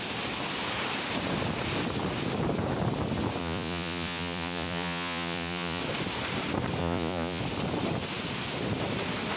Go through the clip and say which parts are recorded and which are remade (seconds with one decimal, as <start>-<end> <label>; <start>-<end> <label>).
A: 0.0-3.4 recorded; 3.4-5.8 remade; 5.8-6.8 recorded; 6.8-7.4 remade; 7.4-9.4 recorded